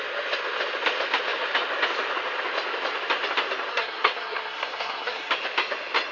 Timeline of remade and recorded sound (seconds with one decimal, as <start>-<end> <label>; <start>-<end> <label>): 0.0-3.7 recorded; 3.7-5.3 remade; 5.3-6.1 recorded